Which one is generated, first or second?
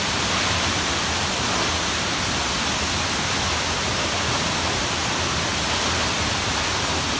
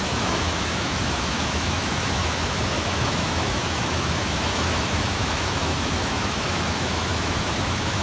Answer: second